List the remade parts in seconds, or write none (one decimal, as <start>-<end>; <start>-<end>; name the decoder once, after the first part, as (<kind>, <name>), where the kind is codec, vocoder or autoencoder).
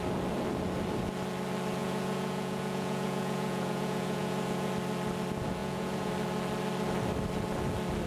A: 1.8-4.7 (vocoder, Vocos); 5.6-6.1